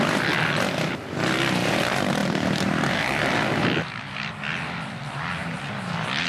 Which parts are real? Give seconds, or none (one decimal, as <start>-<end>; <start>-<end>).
0.0-2.2; 2.9-5.4